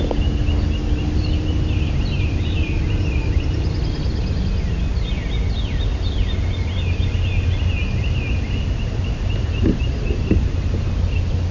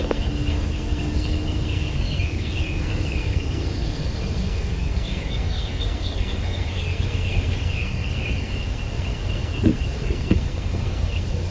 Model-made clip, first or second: second